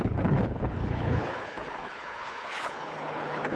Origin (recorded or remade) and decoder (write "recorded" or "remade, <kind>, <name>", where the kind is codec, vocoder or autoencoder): remade, codec, HILCodec